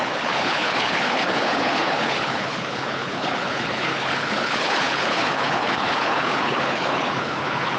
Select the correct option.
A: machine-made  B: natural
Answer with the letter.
A